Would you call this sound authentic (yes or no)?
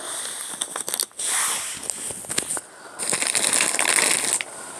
yes